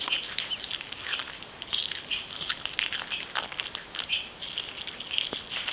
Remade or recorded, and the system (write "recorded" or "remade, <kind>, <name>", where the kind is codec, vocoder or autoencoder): recorded